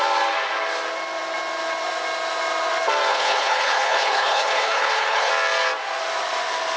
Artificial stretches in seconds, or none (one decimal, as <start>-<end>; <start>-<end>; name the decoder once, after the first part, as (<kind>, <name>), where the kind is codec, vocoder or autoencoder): 3.1-5.3 (codec, HILCodec)